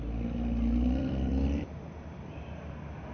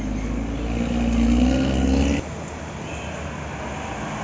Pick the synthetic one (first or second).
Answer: first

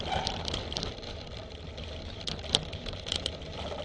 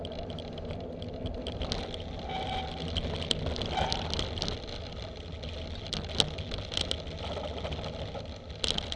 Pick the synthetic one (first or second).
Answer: first